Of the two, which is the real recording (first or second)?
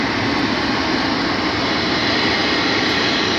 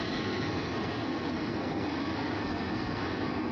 first